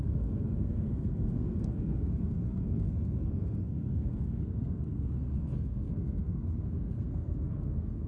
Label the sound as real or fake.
fake